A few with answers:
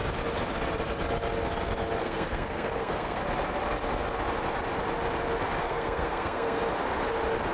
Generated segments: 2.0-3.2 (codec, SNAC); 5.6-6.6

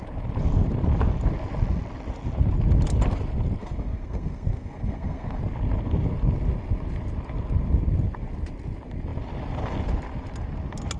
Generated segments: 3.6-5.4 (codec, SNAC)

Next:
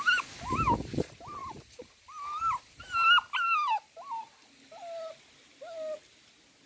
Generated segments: none